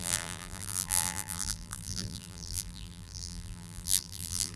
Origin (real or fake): fake